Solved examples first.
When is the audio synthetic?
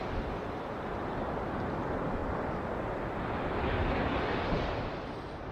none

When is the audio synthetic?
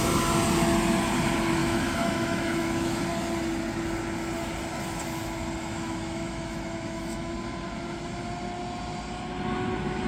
1.6-3.0 (autoencoder, DAC-VAE); 5.7-7.3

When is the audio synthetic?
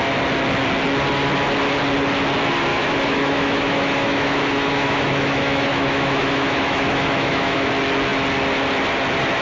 2.7-7.7 (autoencoder, DAC-VAE)